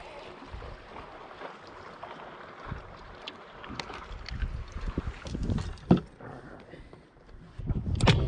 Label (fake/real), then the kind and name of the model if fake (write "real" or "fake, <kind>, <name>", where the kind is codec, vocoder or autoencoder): real